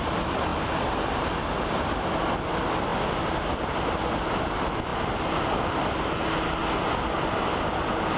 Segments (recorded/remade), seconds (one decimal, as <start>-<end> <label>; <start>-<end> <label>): 0.0-8.2 recorded